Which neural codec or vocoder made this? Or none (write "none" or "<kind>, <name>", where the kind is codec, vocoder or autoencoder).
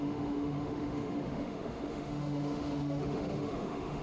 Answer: autoencoder, DAC-VAE